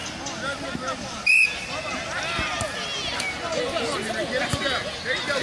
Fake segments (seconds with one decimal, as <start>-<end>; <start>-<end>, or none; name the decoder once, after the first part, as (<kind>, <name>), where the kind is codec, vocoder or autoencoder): none